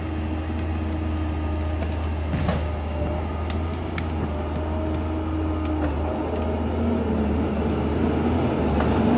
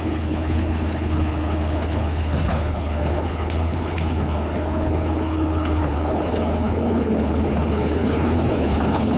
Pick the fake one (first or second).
second